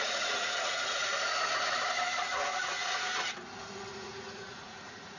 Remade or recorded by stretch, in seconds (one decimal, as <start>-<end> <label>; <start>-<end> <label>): 0.0-1.0 remade; 1.0-2.2 recorded; 2.2-3.1 remade; 3.1-3.9 recorded; 3.9-5.2 remade